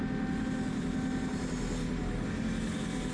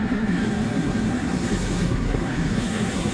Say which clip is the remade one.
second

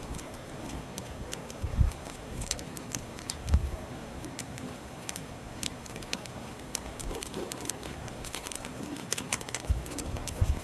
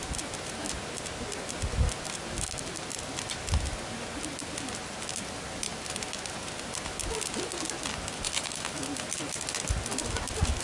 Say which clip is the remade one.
first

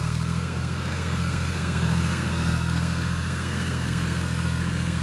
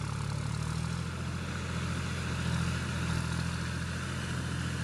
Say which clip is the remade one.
first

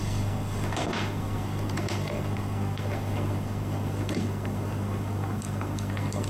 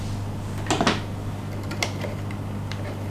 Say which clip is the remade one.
first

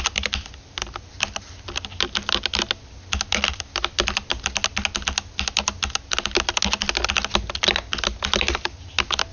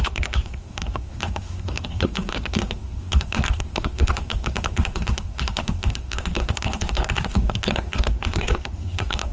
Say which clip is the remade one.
second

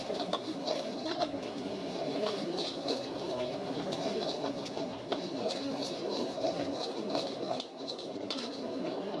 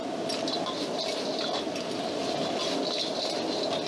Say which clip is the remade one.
first